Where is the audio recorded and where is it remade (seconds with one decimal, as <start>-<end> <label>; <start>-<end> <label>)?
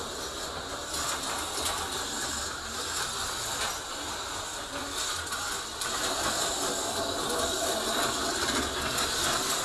0.0-6.8 recorded; 6.8-8.3 remade; 8.3-9.6 recorded